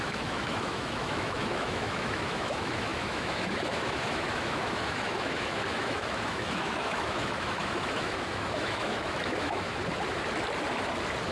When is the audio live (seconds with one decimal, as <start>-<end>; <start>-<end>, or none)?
9.7-11.3